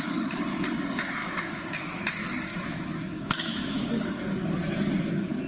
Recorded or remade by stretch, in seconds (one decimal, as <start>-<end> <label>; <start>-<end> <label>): 0.0-1.2 recorded; 1.2-2.0 remade; 2.0-2.5 recorded; 2.5-3.9 remade; 3.9-5.5 recorded